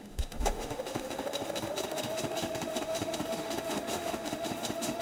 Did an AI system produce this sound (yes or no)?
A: yes